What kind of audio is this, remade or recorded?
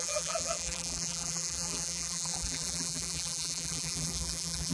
remade